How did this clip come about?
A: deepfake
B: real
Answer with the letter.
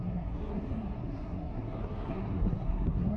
A